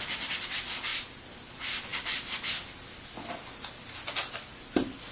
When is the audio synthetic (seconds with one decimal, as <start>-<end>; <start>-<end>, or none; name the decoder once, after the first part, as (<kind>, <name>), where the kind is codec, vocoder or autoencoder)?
none